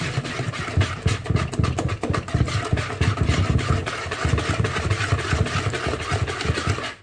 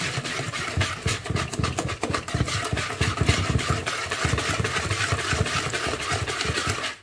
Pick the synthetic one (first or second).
second